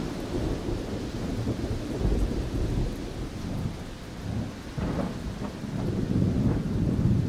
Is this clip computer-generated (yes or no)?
no